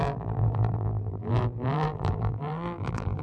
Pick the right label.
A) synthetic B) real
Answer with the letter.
A